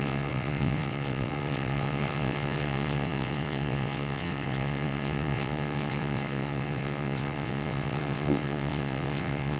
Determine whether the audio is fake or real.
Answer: fake